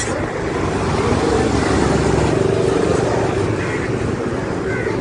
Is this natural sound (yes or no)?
yes